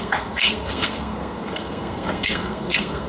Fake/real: fake